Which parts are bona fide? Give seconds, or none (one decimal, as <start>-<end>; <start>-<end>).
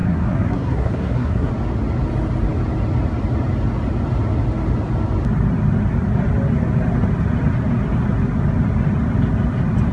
1.5-9.9